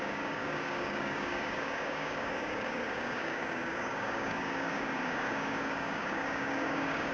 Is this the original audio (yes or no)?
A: no